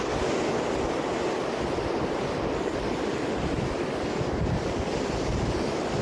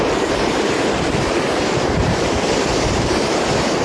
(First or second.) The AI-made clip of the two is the second